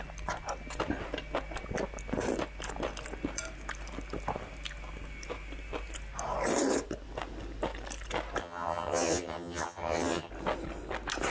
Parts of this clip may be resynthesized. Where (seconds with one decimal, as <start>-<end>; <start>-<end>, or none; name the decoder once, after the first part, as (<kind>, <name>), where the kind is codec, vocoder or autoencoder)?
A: 8.4-10.3 (vocoder, HiFi-GAN)